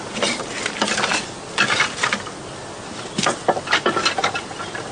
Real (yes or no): yes